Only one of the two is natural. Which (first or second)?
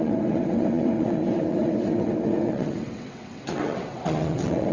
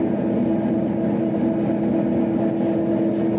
second